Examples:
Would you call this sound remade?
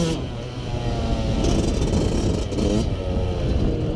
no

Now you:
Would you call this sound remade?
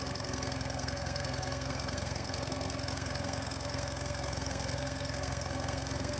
yes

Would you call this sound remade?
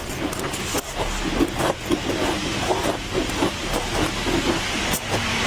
no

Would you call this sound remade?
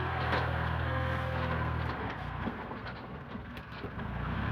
yes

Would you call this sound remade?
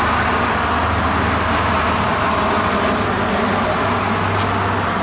no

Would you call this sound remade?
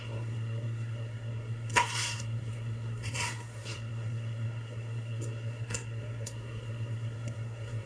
yes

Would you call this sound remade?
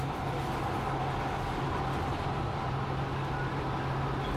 no